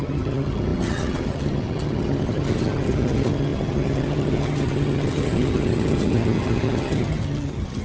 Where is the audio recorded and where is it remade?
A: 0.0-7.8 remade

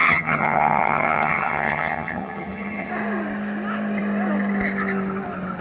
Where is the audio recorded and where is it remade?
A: 0.0-2.9 remade; 2.9-5.6 recorded

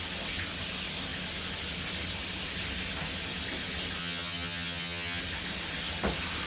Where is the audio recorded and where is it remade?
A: 0.0-4.0 recorded; 4.0-5.2 remade; 5.2-6.5 recorded

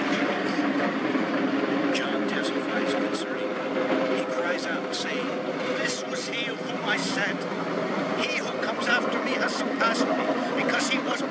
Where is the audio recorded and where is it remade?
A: 0.0-11.3 recorded

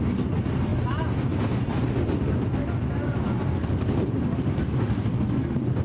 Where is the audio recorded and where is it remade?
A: 0.0-5.8 recorded

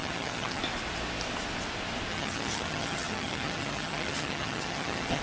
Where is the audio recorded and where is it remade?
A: 0.0-0.6 remade; 0.6-2.1 recorded; 2.1-5.2 remade

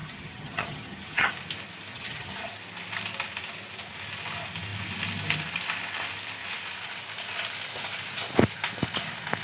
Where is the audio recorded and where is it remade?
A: 0.0-1.3 remade; 1.3-1.9 recorded; 1.9-2.5 remade; 2.5-9.4 recorded